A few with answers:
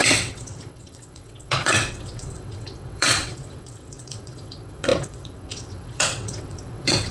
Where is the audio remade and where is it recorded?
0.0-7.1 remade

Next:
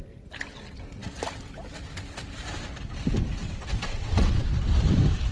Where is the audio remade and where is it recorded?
0.0-3.4 recorded; 3.4-4.5 remade; 4.5-5.3 recorded

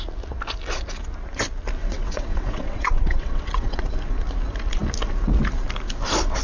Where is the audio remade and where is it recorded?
0.0-1.8 recorded; 1.8-3.8 remade; 3.8-6.4 recorded

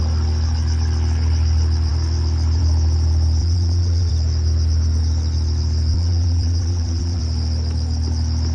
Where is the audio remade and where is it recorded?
0.0-3.4 recorded; 3.4-4.1 remade; 4.1-5.9 recorded; 5.9-7.2 remade; 7.2-8.5 recorded

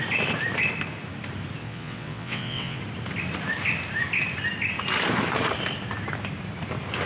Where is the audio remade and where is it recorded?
0.0-1.6 recorded; 1.6-2.8 remade; 2.8-7.1 recorded